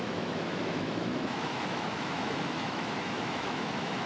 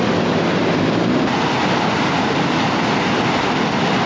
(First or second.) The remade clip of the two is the first